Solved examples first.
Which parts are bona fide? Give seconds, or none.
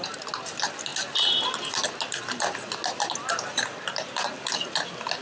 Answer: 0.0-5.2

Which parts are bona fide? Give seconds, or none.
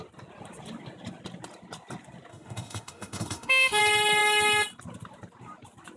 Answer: 0.0-2.3; 3.8-6.0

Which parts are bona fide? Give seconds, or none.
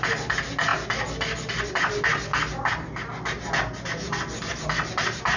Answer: 0.0-5.4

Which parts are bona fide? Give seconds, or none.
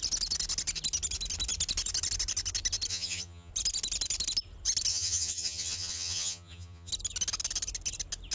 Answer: 0.0-2.9; 3.5-4.9; 6.9-8.3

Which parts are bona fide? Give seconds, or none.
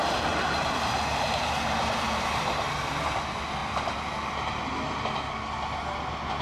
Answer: 2.7-6.4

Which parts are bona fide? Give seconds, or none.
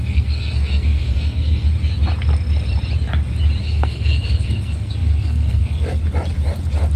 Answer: 1.7-3.6; 6.0-7.0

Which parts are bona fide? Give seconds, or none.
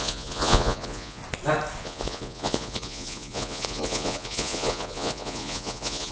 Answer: 1.2-1.8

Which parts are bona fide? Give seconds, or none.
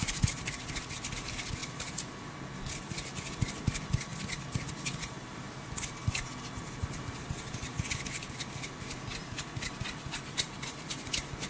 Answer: 0.6-11.5